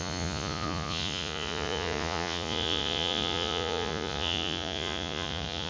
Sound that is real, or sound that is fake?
fake